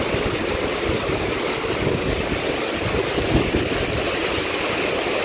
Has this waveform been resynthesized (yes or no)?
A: no